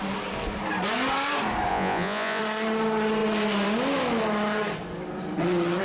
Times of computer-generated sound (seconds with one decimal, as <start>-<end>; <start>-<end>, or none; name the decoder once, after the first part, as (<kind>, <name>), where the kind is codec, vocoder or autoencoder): 1.7-2.4 (vocoder, Vocos)